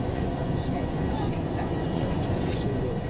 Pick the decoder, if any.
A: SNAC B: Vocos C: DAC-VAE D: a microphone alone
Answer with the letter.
B